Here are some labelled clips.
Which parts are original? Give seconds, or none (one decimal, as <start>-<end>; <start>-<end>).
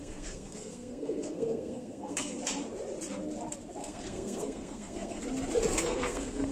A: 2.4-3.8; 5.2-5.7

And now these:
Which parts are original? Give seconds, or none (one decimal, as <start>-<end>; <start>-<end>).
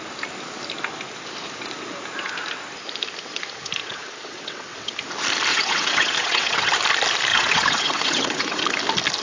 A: 0.0-3.8; 4.9-5.5; 6.7-7.3; 8.6-9.2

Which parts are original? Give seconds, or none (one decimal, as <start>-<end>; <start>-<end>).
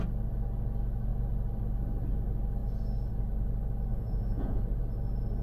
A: 0.0-3.9; 4.6-5.4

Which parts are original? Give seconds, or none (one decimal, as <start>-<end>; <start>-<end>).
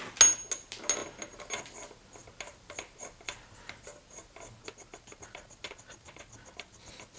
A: 0.0-7.2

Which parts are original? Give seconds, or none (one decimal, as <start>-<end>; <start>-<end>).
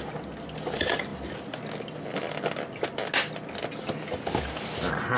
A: 0.0-5.2